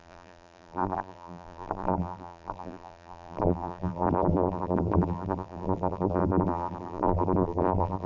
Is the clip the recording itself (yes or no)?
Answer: no